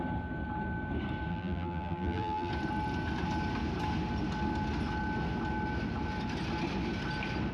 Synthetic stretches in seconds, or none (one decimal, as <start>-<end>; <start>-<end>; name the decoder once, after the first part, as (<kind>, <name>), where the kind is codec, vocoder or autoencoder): 1.3-2.5 (vocoder, BigVGAN v2)

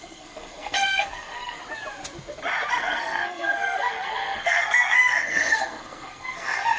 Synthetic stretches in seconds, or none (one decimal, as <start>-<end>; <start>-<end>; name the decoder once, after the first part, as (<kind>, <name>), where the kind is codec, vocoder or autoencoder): 0.0-1.6 (codec, SNAC); 2.7-6.8

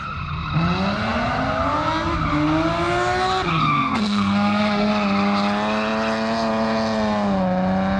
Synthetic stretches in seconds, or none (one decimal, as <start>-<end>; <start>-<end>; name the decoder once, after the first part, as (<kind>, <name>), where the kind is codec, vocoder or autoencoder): 3.5-4.9 (codec, SNAC)